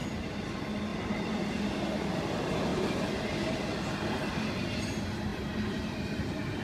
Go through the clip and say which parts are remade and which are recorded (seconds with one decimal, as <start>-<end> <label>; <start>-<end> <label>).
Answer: 0.0-0.9 recorded; 0.9-1.6 remade; 1.6-5.3 recorded; 5.3-6.6 remade

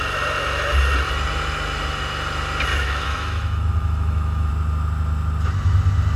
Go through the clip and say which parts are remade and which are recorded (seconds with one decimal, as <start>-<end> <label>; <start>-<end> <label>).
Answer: 0.0-2.7 recorded; 2.7-4.5 remade; 4.5-6.2 recorded

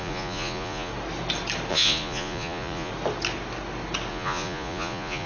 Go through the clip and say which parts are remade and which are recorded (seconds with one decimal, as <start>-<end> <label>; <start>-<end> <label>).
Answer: 0.0-0.9 remade; 0.9-1.7 recorded; 1.7-2.9 remade; 2.9-4.1 recorded; 4.1-5.3 remade

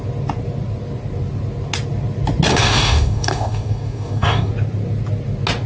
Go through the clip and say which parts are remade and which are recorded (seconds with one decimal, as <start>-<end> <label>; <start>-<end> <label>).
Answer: 0.0-2.5 recorded; 2.5-4.5 remade; 4.5-5.7 recorded

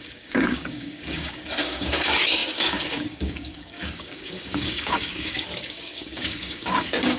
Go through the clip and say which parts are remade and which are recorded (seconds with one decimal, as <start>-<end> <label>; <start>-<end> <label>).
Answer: 0.0-7.2 remade

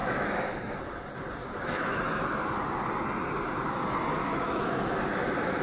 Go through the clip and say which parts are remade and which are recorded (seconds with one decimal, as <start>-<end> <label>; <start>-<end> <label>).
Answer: 0.0-0.8 remade; 0.8-1.4 recorded; 1.4-2.0 remade; 2.0-4.2 recorded; 4.2-4.8 remade; 4.8-5.6 recorded